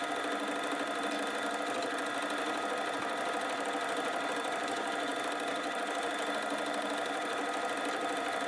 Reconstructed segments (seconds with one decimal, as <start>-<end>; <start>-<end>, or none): none